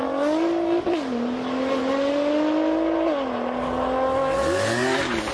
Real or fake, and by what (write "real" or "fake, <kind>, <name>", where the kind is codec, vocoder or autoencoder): real